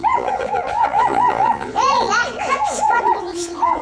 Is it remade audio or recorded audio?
remade